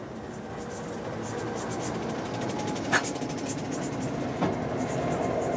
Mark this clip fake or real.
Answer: real